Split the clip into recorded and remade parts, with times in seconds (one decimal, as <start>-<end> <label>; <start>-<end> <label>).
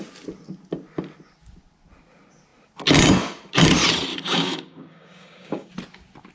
0.0-4.1 recorded; 4.1-5.7 remade; 5.7-6.3 recorded